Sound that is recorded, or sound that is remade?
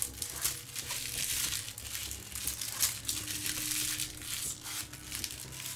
recorded